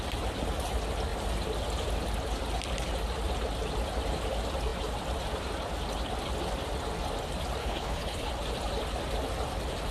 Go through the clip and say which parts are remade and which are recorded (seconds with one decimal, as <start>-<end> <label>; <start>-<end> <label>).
0.0-7.6 recorded; 7.6-8.3 remade; 8.3-9.9 recorded